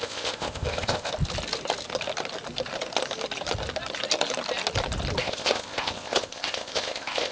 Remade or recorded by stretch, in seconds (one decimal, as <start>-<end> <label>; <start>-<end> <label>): 0.0-1.1 remade; 1.1-5.2 recorded; 5.2-7.3 remade